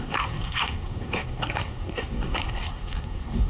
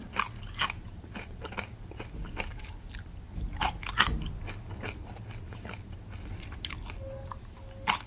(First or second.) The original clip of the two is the second